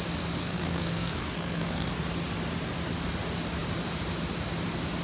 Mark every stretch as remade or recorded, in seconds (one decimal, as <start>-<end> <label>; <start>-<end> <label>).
0.0-0.4 recorded; 0.4-1.9 remade; 1.9-5.0 recorded